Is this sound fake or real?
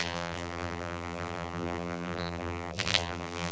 fake